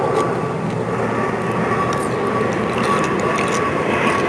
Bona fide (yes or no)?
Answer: yes